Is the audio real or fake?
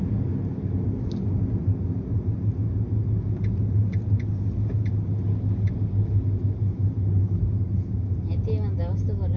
real